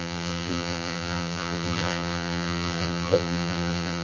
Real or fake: fake